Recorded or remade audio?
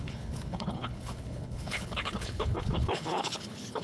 remade